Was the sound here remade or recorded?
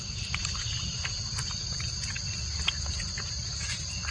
recorded